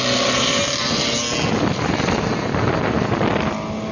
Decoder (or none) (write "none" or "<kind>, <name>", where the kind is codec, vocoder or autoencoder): none